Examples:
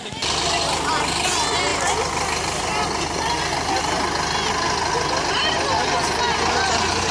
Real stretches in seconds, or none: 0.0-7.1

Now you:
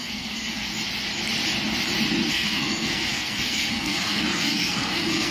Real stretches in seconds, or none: 0.7-2.3

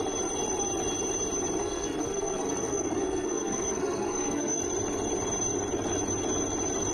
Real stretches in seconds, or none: 0.0-1.6; 4.6-6.9

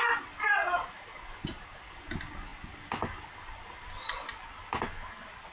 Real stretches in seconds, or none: 0.0-5.5